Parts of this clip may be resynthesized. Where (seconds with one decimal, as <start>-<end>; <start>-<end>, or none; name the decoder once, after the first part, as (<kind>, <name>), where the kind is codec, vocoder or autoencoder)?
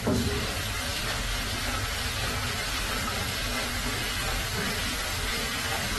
none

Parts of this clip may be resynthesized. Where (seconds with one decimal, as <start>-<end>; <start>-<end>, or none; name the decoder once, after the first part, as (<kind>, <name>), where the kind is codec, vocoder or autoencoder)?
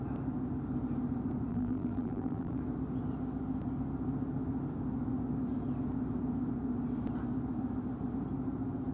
1.5-2.6 (vocoder, BigVGAN v2)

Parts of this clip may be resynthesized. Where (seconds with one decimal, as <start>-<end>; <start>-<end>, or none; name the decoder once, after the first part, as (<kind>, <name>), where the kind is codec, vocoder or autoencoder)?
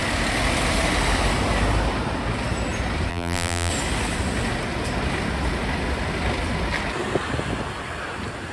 3.1-3.7 (vocoder, BigVGAN v2)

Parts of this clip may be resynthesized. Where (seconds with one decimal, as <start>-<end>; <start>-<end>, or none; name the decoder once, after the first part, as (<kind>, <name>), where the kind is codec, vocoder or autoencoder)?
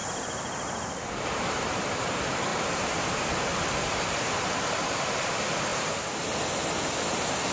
2.5-5.3 (vocoder, BigVGAN v2); 5.7-6.5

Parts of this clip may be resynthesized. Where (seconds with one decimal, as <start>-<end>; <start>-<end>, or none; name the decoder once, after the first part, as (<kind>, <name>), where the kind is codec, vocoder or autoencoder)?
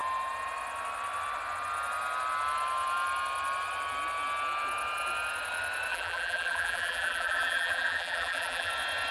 5.9-8.7 (vocoder, BigVGAN v2)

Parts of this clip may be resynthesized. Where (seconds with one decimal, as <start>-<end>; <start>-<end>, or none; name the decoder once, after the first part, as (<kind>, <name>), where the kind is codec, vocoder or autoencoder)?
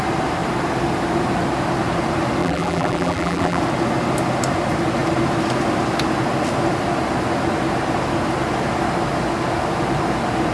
2.4-3.6 (vocoder, BigVGAN v2)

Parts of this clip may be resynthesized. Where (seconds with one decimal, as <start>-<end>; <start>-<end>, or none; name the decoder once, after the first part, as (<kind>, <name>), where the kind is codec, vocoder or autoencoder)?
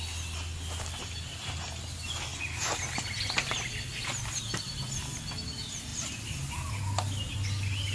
none